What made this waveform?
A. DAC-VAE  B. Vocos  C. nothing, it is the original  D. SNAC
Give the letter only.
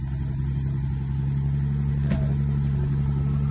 C